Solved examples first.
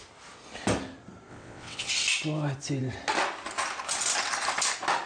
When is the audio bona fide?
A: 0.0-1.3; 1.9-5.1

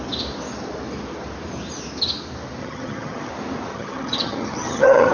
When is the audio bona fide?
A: 0.0-2.6; 3.3-3.7

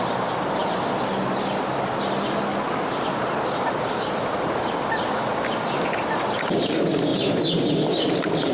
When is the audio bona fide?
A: 0.0-7.1

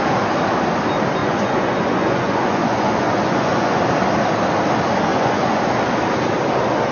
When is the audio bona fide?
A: 0.0-1.2; 3.8-5.1; 5.6-6.9

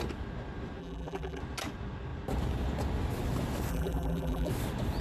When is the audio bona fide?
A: 0.0-0.8; 1.4-3.7; 4.5-5.0

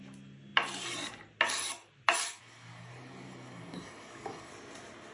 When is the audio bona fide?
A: 0.0-2.3; 4.5-5.1

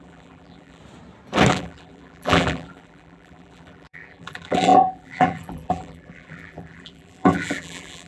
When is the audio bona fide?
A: 0.8-1.5